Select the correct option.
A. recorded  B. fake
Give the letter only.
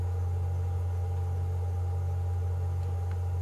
A